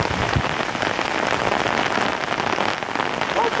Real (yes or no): yes